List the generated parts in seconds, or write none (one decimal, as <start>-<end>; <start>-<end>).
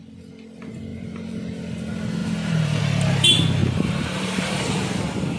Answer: 0.9-1.6; 2.2-2.8; 3.6-4.7